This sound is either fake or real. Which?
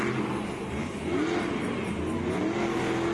real